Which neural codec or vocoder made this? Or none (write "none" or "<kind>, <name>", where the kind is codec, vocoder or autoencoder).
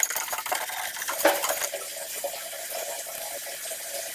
none